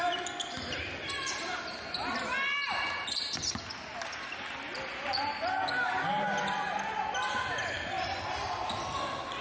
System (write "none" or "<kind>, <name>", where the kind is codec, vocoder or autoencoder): none